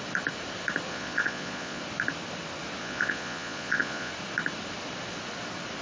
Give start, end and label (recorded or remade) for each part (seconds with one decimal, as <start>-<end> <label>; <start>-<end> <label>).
0.0-0.9 recorded; 0.9-1.8 remade; 1.8-2.8 recorded; 2.8-4.1 remade; 4.1-5.8 recorded